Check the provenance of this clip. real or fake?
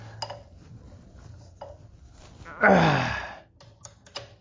real